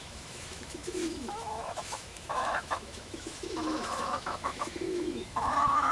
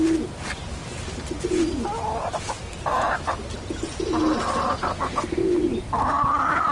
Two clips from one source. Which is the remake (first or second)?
first